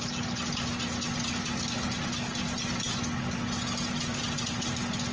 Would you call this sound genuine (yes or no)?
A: yes